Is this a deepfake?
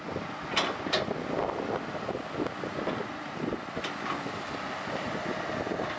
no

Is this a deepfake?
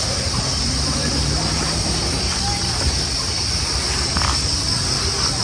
no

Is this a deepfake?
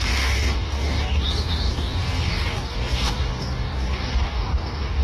yes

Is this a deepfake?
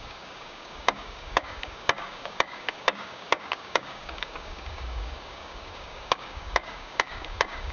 yes